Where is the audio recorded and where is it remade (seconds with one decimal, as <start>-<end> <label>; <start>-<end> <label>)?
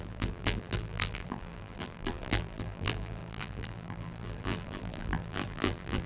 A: 0.0-6.1 remade